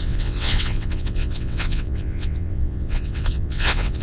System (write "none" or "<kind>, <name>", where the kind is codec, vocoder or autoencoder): vocoder, WaveNeXt